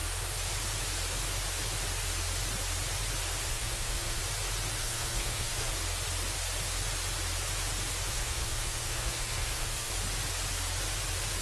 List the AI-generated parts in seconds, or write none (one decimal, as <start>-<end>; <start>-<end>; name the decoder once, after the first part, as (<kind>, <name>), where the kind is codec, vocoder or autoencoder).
3.5-4.2 (codec, SNAC); 4.8-5.7; 8.1-9.9